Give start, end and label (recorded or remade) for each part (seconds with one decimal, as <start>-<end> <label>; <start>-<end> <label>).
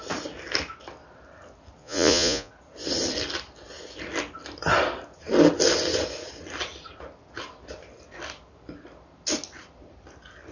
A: 0.0-1.8 recorded; 1.8-2.5 remade; 2.5-10.5 recorded